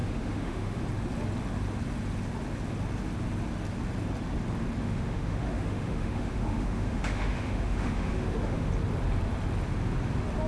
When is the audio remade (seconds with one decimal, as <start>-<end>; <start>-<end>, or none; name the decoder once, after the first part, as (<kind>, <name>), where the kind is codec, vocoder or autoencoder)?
0.0-0.8 (autoencoder, DAC-VAE); 4.8-8.7